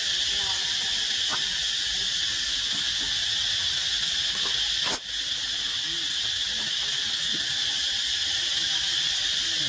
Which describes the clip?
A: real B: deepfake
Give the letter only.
A